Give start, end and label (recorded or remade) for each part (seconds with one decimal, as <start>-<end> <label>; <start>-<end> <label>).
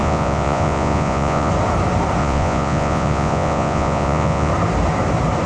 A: 0.0-1.5 remade; 1.5-2.2 recorded; 2.2-4.5 remade; 4.5-5.5 recorded